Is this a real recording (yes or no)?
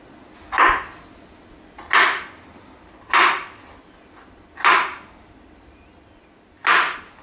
yes